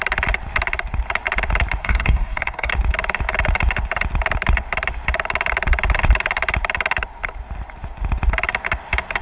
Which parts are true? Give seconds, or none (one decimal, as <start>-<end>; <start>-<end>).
0.0-1.8; 2.7-9.2